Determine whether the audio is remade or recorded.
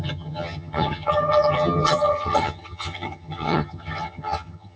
remade